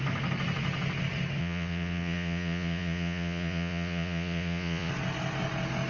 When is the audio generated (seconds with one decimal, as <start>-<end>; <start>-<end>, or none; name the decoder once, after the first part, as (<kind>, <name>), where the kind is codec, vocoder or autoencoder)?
1.4-4.9 (vocoder, Vocos)